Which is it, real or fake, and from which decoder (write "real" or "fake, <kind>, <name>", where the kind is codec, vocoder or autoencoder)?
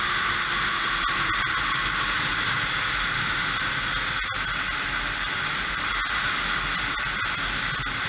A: real